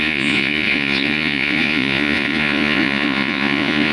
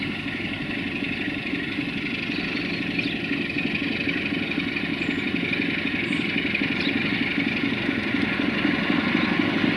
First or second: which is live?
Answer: second